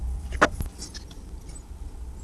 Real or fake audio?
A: real